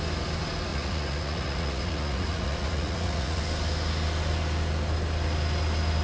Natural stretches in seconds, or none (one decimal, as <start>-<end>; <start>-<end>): 0.0-0.7; 3.4-6.0